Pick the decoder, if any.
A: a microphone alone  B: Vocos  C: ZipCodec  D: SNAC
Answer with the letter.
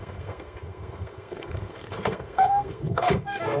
D